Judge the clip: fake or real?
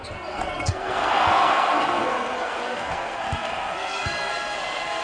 fake